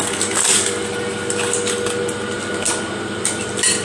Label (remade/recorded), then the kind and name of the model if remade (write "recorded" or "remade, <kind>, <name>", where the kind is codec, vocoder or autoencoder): recorded